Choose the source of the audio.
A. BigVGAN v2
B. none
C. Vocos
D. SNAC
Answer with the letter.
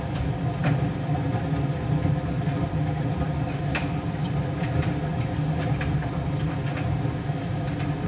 B